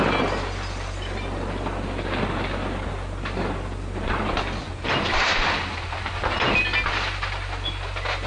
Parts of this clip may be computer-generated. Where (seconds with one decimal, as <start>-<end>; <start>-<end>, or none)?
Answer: 4.6-6.5